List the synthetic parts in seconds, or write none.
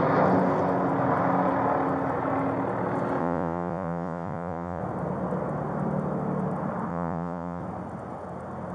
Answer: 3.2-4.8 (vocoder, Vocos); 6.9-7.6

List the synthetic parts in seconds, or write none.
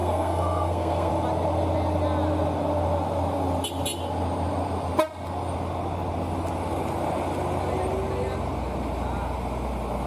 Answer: 0.0-1.1 (codec, SNAC)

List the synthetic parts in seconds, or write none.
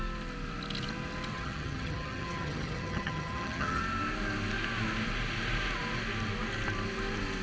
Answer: 1.3-3.8 (vocoder, HiFi-GAN)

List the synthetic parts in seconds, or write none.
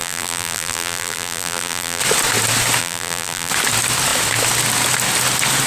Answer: 0.0-2.0 (vocoder, BigVGAN v2); 2.8-3.5